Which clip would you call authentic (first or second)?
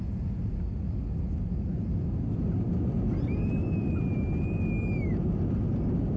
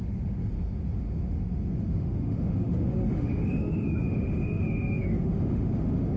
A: first